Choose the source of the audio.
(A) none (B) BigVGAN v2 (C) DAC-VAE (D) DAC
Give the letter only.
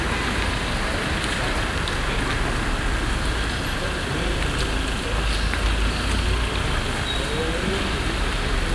A